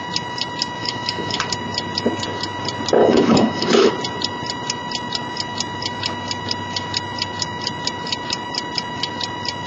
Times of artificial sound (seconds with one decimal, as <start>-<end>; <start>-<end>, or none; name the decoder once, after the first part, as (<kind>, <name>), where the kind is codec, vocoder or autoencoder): 0.8-1.4 (autoencoder, DAC-VAE); 3.0-3.9